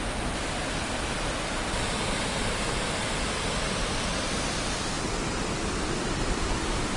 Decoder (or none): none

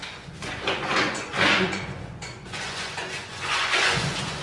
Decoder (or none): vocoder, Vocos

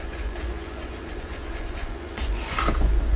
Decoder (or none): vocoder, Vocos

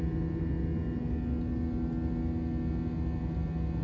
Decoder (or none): none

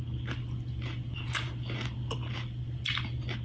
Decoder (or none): none